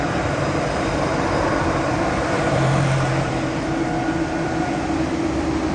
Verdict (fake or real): fake